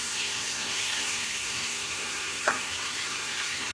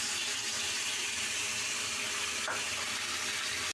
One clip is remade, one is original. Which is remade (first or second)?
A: first